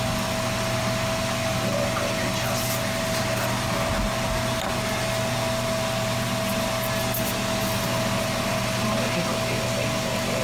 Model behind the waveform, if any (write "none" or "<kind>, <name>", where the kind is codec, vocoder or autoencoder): none